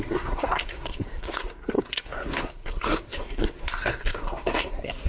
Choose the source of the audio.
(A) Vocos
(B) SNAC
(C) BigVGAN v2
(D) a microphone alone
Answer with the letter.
B